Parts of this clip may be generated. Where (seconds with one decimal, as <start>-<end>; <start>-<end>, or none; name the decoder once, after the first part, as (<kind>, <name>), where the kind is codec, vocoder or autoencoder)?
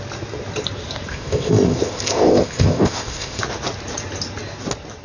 1.1-3.4 (codec, ZipCodec)